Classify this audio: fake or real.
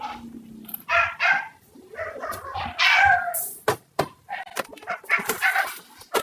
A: real